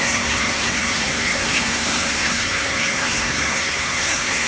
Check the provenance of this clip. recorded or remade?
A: remade